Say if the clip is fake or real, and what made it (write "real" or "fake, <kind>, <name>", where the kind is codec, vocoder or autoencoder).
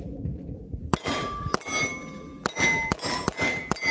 fake, vocoder, BigVGAN v2